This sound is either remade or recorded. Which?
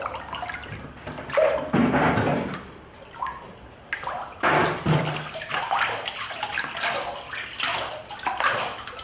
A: recorded